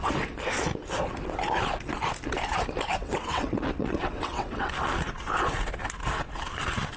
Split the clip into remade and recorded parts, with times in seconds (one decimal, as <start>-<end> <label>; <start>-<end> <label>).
0.0-3.0 recorded; 3.0-4.7 remade; 4.7-7.0 recorded